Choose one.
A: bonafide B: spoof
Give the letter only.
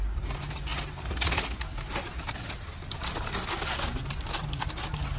A